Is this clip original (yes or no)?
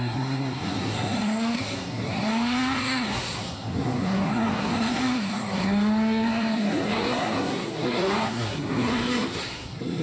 no